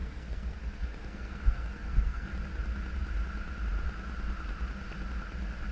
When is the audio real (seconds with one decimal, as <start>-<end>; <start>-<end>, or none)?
2.3-5.7